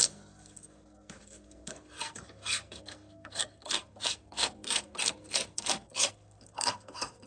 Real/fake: fake